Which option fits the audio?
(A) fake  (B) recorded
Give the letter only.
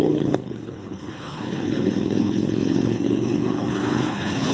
A